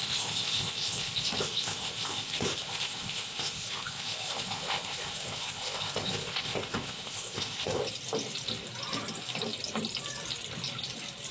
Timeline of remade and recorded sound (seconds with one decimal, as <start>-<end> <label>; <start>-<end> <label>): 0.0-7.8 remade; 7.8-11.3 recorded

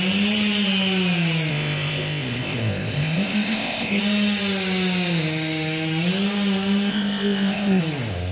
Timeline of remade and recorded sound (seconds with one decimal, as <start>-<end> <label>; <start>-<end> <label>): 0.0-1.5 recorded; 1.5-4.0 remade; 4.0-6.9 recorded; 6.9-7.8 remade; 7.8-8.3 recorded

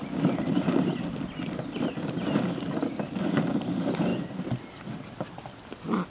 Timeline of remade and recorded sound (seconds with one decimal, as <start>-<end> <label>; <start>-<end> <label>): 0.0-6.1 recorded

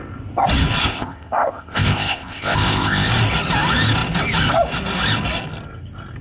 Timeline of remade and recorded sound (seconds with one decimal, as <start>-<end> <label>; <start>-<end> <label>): 0.0-0.8 recorded; 0.8-3.1 remade; 3.1-6.2 recorded